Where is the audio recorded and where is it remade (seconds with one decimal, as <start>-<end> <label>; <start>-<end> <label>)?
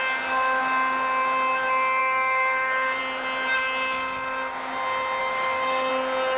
0.0-2.0 recorded; 2.0-3.0 remade; 3.0-5.2 recorded; 5.2-5.9 remade; 5.9-6.4 recorded